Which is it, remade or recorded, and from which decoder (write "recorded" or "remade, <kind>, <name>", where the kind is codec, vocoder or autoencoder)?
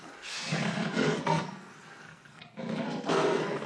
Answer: remade, codec, SNAC